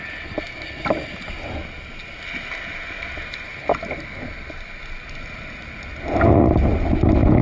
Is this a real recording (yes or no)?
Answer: yes